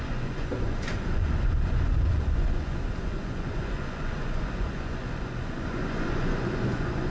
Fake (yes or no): yes